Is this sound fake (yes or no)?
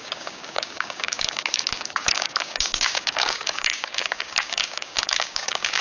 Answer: yes